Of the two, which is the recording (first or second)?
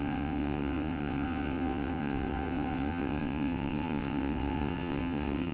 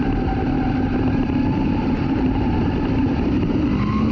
second